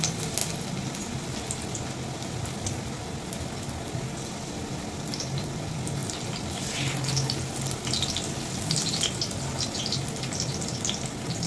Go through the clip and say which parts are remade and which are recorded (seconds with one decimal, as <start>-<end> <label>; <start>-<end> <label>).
0.0-11.5 recorded